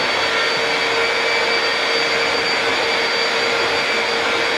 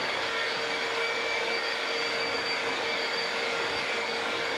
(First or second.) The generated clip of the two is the second